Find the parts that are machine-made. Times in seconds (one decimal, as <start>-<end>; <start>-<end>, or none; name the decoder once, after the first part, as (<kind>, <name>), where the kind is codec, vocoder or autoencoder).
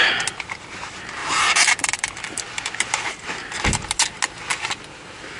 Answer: 1.2-3.4 (vocoder, BigVGAN v2)